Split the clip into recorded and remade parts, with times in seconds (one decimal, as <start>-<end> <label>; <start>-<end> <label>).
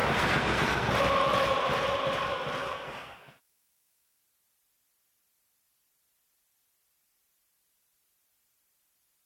0.0-0.9 remade; 0.9-2.6 recorded; 2.6-4.2 remade; 4.2-9.3 recorded